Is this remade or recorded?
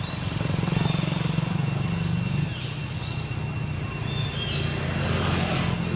recorded